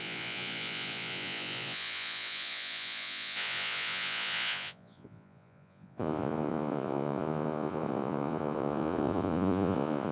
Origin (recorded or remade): remade